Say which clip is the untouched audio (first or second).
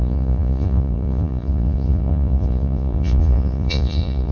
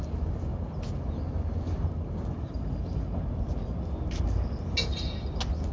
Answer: second